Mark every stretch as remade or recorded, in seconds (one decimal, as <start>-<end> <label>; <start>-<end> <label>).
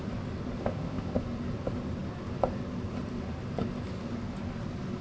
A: 0.0-0.6 recorded; 0.6-1.2 remade; 1.2-5.0 recorded